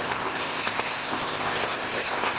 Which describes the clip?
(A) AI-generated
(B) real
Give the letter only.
A